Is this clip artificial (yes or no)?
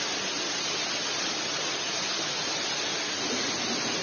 no